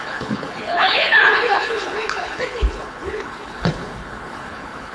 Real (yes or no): no